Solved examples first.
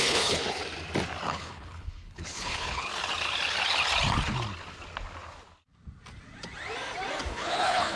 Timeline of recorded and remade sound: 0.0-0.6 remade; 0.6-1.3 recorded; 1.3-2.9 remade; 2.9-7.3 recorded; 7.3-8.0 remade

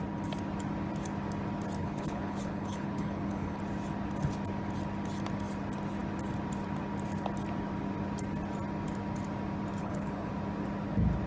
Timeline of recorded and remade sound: 0.0-1.8 recorded; 1.8-3.6 remade; 3.6-9.8 recorded; 9.8-10.3 remade; 10.3-11.3 recorded

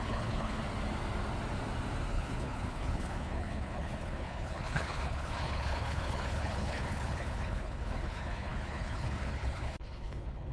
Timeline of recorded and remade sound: 0.0-0.6 remade; 0.6-2.1 recorded; 2.1-10.5 remade

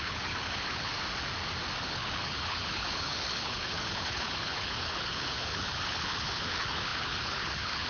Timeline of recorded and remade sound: 0.0-0.9 remade; 0.9-1.8 recorded; 1.8-7.9 remade

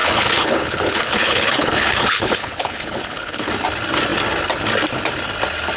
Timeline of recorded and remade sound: 0.0-3.5 remade; 3.5-5.8 recorded

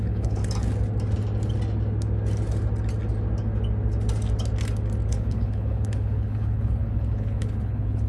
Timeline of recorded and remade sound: 0.0-0.4 remade; 0.4-5.1 recorded; 5.1-8.1 remade